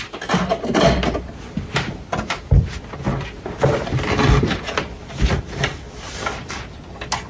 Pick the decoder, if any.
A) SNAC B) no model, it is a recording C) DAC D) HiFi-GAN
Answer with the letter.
B